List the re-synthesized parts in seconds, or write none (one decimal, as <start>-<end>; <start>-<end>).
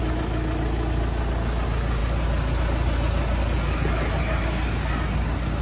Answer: none